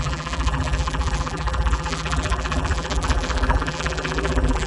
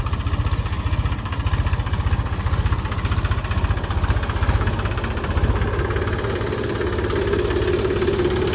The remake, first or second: first